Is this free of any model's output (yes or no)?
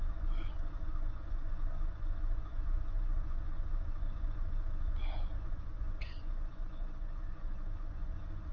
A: no